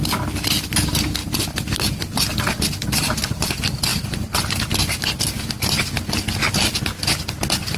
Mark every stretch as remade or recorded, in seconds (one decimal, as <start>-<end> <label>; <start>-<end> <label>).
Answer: 0.0-2.8 recorded; 2.8-3.4 remade; 3.4-7.8 recorded

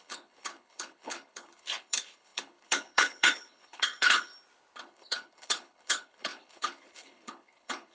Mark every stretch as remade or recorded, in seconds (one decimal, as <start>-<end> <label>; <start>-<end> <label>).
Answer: 0.0-4.3 remade; 4.3-4.8 recorded; 4.8-7.9 remade

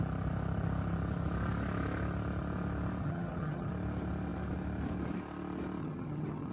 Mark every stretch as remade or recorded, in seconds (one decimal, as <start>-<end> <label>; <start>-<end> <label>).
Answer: 0.0-3.0 recorded; 3.0-3.7 remade; 3.7-5.8 recorded; 5.8-6.5 remade

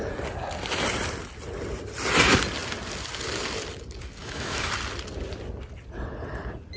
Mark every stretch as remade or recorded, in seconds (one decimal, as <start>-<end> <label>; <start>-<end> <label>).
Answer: 0.0-4.2 recorded; 4.2-4.7 remade; 4.7-6.8 recorded

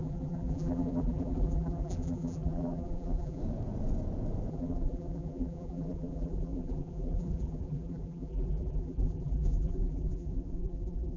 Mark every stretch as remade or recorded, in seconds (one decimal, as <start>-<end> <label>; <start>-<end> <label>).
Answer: 0.0-3.4 remade; 3.4-4.5 recorded; 4.5-11.2 remade

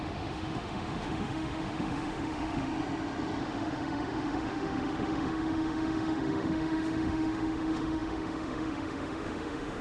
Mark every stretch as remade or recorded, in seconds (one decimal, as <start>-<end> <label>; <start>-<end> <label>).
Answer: 0.0-2.7 remade; 2.7-3.4 recorded; 3.4-9.8 remade